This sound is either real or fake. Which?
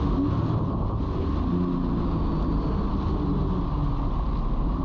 real